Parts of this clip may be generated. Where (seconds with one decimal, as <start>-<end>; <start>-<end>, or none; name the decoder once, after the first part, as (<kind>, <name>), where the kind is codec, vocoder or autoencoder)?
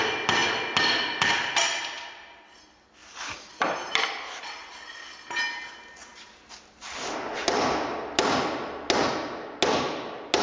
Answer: 3.0-3.6 (vocoder, BigVGAN v2)